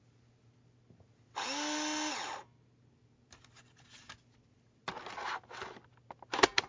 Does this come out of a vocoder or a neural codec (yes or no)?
no